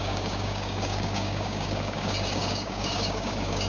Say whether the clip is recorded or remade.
remade